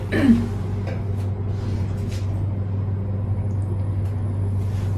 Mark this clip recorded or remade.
recorded